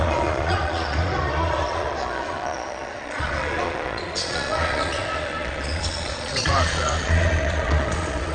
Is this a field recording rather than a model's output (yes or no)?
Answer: no